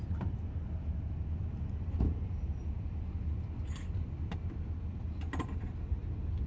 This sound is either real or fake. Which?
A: real